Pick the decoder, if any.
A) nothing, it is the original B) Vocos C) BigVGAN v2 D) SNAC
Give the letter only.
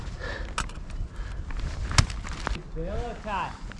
A